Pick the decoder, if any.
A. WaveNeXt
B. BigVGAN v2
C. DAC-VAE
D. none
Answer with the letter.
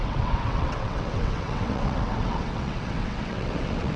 A